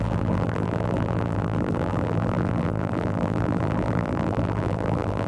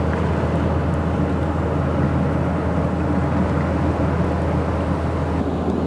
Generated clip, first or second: first